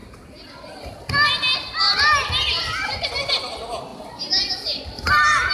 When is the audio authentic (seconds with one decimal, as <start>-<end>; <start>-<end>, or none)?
0.0-5.5